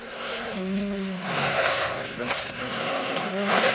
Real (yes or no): no